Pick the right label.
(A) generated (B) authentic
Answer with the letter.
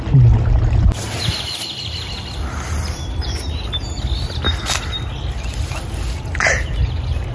B